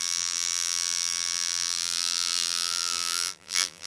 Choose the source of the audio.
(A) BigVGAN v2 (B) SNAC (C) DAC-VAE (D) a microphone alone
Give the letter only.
A